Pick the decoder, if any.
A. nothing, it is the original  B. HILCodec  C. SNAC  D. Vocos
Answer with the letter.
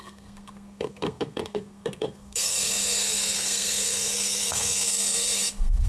C